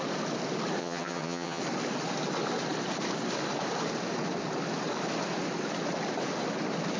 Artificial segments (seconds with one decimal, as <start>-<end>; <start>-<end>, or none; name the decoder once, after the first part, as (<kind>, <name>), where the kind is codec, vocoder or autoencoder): 0.8-1.6 (vocoder, HiFi-GAN)